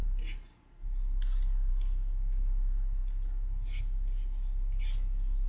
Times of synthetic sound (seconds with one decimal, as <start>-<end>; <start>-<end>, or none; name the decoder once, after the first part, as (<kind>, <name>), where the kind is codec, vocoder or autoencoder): none